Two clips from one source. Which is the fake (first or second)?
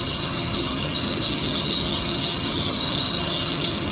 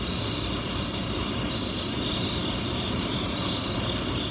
first